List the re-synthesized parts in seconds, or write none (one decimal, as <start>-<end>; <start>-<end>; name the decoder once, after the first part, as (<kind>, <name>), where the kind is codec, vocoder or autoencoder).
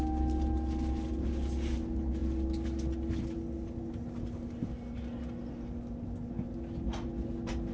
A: none